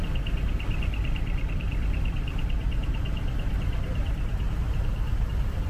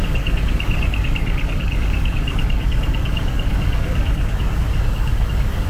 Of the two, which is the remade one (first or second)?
second